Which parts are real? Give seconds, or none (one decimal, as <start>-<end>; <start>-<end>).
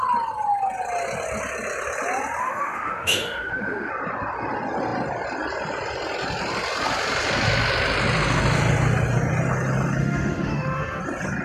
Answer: 0.0-2.4; 3.9-10.0; 11.0-11.4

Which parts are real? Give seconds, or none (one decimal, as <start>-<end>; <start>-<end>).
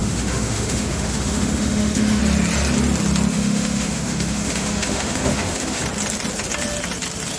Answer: 2.2-3.3; 5.8-7.4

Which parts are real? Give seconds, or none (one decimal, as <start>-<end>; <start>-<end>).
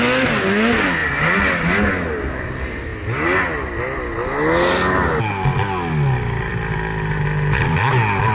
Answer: 0.0-8.3